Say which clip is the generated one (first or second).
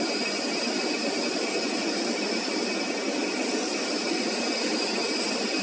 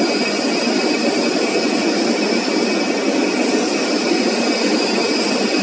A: first